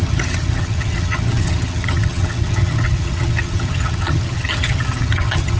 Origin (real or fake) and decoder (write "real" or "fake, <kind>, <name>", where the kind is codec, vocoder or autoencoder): fake, vocoder, HiFi-GAN